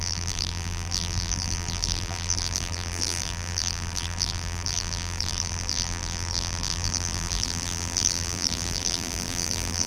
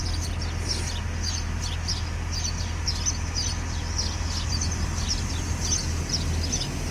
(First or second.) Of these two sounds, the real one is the second